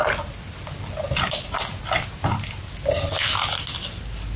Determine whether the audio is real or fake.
real